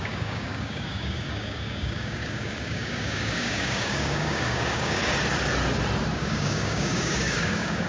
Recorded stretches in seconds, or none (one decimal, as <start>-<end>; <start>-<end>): 5.0-6.1